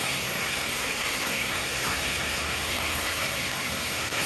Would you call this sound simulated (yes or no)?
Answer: yes